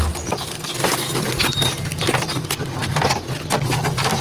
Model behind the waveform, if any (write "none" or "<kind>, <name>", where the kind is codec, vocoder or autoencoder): none